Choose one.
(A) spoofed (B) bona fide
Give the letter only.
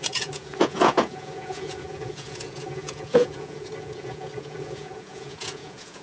A